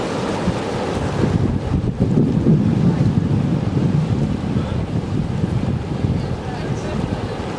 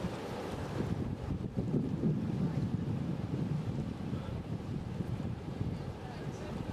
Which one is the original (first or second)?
first